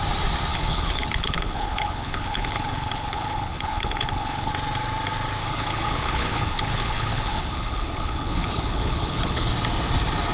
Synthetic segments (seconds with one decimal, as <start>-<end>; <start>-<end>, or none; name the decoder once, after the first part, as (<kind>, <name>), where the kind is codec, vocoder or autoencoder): 0.5-4.5 (codec, HILCodec); 5.4-9.5